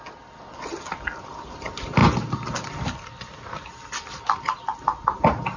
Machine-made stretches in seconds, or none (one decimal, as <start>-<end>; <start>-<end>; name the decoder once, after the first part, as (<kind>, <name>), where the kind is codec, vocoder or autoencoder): none